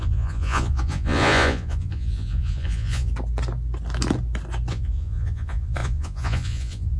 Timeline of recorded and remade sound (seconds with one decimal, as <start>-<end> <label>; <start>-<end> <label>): 0.0-3.1 remade; 3.1-4.7 recorded; 4.7-7.0 remade